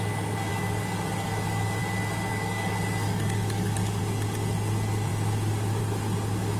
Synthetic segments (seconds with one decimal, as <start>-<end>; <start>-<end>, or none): 0.5-1.8; 2.3-4.0